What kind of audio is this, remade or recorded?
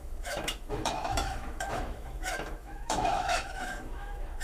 remade